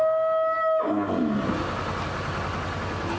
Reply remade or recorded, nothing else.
recorded